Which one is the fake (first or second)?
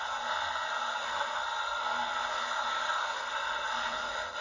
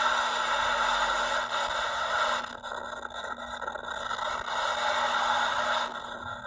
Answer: first